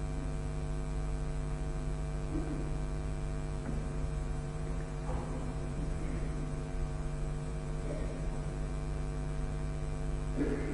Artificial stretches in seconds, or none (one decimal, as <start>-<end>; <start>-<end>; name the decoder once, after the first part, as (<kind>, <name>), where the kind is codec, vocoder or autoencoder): 3.6-8.7 (vocoder, BigVGAN v2)